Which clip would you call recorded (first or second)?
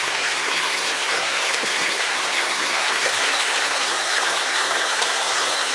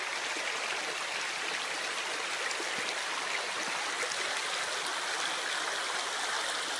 second